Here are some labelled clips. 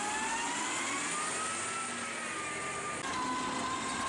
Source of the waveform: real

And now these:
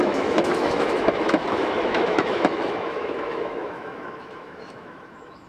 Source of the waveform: fake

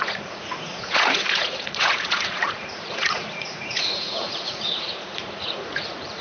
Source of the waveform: fake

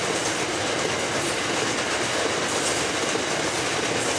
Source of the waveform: real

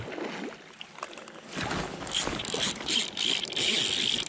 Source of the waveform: real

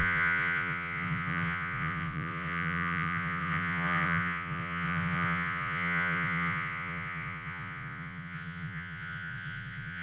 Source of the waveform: fake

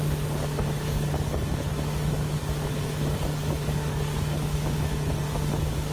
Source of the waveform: fake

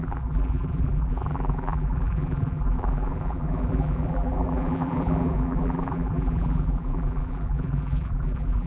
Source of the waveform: fake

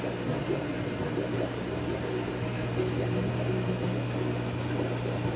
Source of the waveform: real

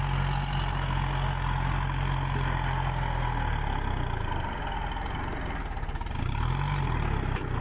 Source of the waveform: real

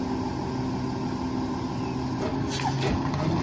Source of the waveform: real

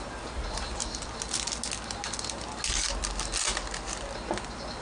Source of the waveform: real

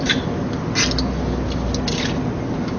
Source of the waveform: real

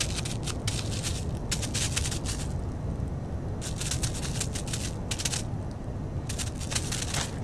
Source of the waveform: real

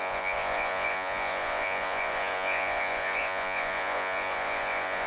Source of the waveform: fake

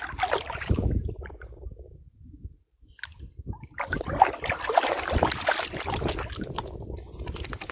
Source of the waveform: real